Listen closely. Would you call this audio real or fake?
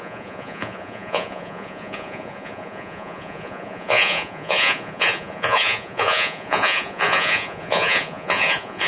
fake